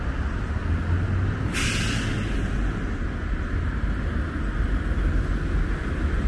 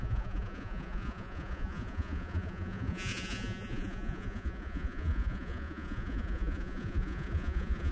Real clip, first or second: first